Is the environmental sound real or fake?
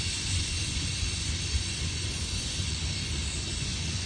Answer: fake